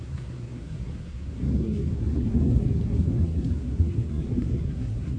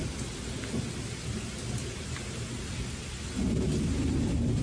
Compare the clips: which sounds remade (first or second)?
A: first